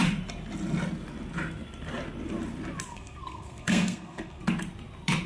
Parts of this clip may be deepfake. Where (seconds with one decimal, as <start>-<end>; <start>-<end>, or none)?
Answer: 2.9-4.4